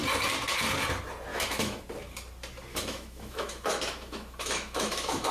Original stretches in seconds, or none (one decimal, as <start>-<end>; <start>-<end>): 0.0-1.3; 1.8-2.7